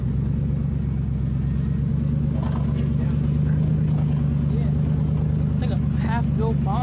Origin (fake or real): real